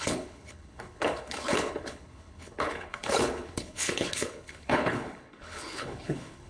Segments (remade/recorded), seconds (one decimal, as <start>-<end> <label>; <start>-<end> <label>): 0.0-6.5 remade

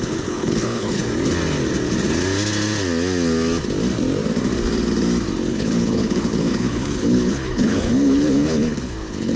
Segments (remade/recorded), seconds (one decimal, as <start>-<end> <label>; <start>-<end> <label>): 0.0-1.0 remade; 1.0-5.5 recorded; 5.5-9.4 remade